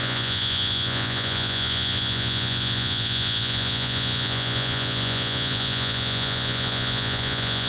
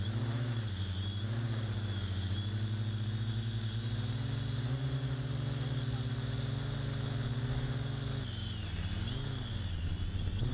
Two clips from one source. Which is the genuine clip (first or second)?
second